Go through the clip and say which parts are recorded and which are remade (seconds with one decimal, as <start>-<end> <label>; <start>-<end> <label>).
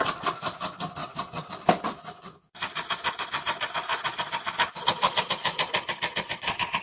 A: 0.0-1.0 recorded; 1.0-1.5 remade; 1.5-6.8 recorded